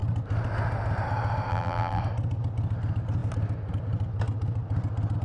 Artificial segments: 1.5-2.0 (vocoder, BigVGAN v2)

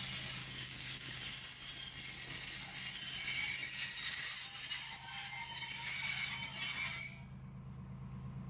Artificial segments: 0.4-1.2 (codec, DAC)

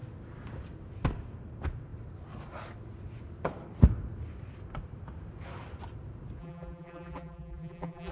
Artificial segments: 6.4-8.1 (vocoder, BigVGAN v2)

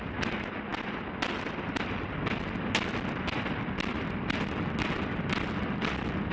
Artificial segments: none

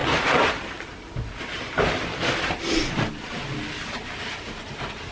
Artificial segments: none